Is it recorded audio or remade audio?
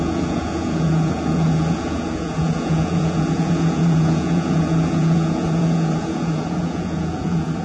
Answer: remade